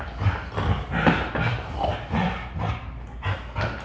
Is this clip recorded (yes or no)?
yes